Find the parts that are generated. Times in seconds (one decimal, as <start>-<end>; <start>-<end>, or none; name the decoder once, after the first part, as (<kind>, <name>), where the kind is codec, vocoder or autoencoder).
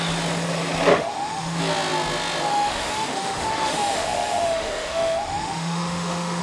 0.9-1.6 (autoencoder, DAC-VAE); 2.5-6.4